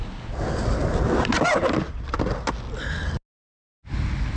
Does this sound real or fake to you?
real